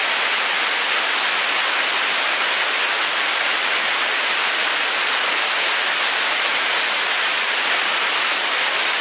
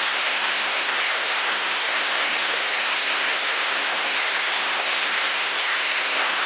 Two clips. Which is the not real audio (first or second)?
second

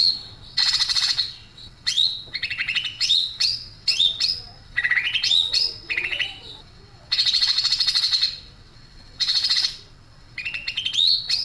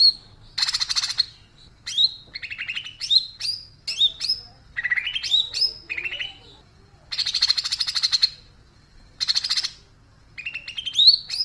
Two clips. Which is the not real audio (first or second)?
first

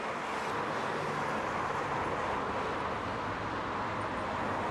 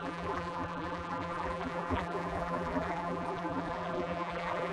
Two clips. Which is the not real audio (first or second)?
second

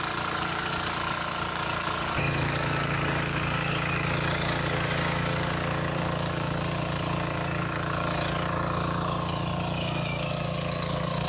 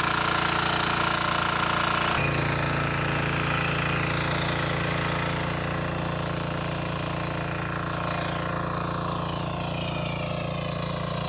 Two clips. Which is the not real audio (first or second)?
first